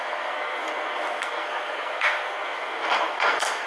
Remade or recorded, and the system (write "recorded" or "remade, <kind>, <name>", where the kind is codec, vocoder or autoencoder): remade, codec, SNAC